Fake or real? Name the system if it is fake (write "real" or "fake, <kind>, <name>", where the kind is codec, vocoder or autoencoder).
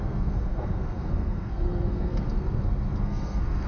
fake, codec, SNAC